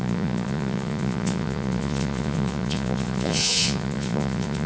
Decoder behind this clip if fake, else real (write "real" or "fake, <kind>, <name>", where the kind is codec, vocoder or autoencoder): fake, vocoder, Vocos